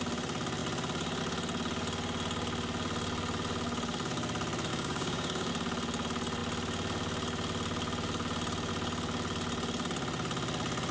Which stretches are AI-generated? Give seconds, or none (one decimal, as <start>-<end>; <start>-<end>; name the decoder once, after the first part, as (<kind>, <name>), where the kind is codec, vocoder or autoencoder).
4.7-5.5 (codec, DAC)